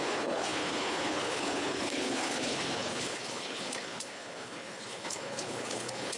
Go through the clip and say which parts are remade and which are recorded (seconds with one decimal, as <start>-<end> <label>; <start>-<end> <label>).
0.0-6.2 remade